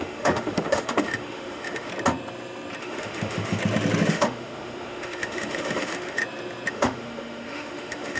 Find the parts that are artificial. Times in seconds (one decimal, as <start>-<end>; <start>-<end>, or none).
0.0-1.9; 2.8-3.6; 4.1-6.2; 6.7-8.2